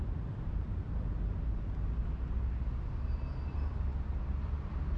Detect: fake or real real